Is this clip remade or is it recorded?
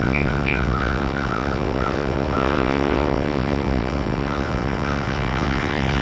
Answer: remade